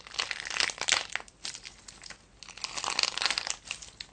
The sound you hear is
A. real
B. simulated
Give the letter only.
A